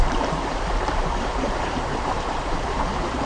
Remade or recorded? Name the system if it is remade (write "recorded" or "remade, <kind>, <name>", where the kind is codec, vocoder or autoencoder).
remade, vocoder, BigVGAN v2